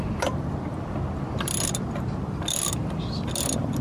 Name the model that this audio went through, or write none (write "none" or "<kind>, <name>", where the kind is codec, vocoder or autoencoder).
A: none